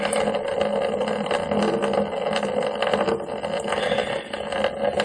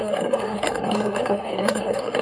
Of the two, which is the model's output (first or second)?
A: second